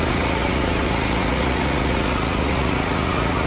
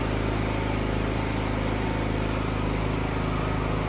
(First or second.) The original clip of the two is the second